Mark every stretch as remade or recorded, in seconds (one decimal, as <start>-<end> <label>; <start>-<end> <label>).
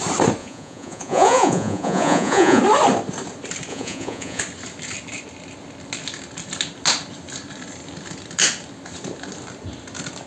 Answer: 0.0-0.4 recorded; 0.4-2.6 remade; 2.6-3.7 recorded; 3.7-4.4 remade; 4.4-10.3 recorded